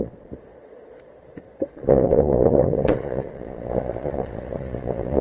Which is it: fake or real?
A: fake